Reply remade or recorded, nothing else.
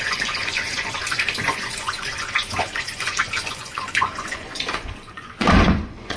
remade